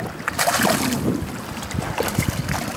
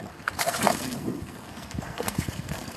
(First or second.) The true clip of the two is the first